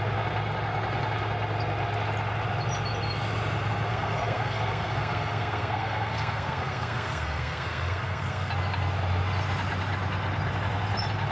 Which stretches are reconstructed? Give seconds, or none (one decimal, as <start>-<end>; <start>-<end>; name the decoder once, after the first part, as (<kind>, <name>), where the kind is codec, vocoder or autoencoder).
3.9-8.5 (codec, SNAC)